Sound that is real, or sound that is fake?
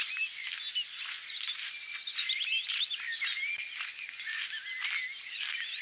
real